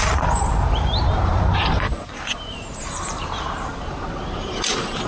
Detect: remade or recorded remade